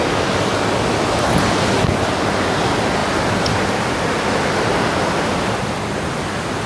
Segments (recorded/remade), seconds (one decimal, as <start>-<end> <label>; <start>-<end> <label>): 0.0-6.7 recorded